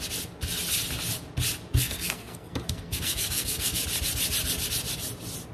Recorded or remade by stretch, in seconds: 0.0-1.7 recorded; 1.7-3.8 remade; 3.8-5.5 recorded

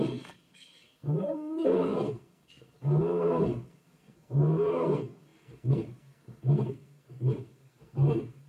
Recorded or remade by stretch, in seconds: 0.0-8.5 remade

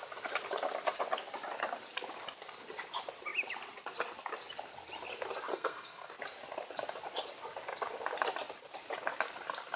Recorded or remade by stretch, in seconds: 0.0-5.5 recorded; 5.5-6.1 remade; 6.1-9.8 recorded